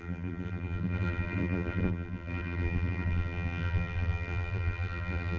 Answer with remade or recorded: remade